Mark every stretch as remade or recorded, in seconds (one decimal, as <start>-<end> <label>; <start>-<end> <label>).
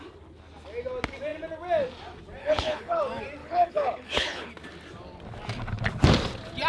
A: 0.0-2.4 recorded; 2.4-3.0 remade; 3.0-3.4 recorded; 3.4-4.5 remade; 4.5-6.7 recorded